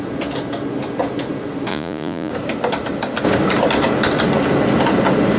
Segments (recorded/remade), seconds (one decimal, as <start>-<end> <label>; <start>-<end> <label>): 0.0-1.7 recorded; 1.7-2.3 remade; 2.3-5.4 recorded